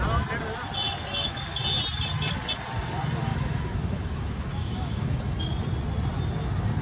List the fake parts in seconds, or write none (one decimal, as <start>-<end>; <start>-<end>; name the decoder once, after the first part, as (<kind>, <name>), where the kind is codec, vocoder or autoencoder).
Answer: 3.3-5.4 (autoencoder, DAC-VAE)